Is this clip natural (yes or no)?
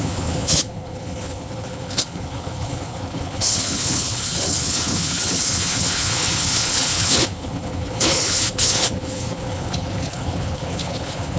no